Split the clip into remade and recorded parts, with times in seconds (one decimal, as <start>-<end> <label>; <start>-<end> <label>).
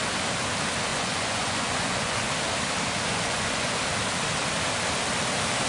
0.0-0.9 recorded; 0.9-2.3 remade; 2.3-3.1 recorded; 3.1-3.8 remade; 3.8-5.7 recorded